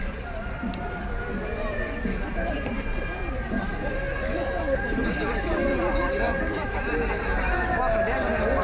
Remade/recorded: remade